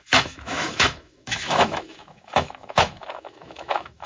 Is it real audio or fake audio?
fake